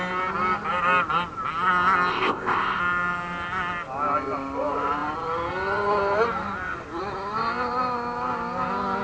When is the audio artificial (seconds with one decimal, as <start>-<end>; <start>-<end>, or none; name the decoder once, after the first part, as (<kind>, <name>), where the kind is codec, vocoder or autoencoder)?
2.1-2.8 (codec, ZipCodec)